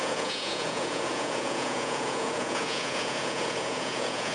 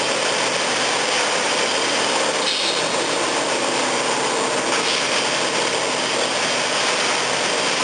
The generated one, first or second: first